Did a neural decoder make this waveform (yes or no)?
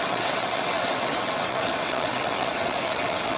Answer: yes